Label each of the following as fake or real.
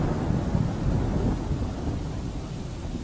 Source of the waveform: real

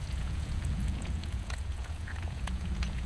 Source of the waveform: fake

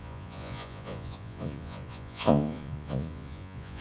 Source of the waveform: fake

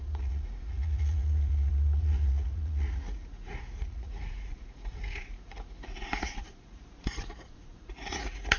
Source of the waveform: fake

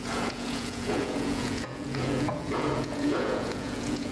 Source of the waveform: fake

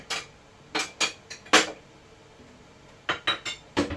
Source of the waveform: real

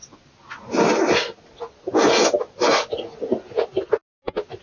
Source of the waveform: real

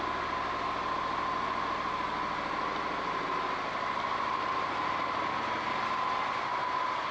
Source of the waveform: real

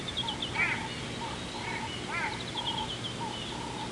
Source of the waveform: real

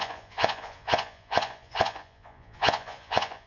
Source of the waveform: fake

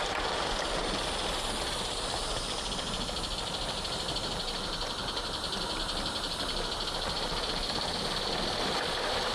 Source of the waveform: real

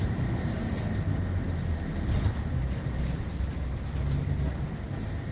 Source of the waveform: real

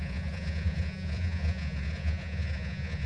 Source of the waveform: fake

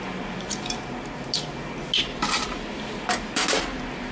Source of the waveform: real